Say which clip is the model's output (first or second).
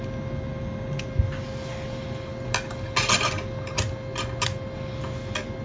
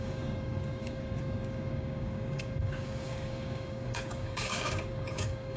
second